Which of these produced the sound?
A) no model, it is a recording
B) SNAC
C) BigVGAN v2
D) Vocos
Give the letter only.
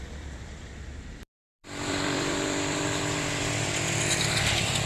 C